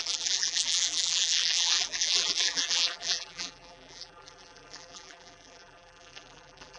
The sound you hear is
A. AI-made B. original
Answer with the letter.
A